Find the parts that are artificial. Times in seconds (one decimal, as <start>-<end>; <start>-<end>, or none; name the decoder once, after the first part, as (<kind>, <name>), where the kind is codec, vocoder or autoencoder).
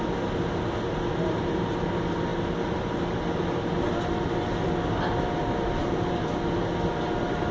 none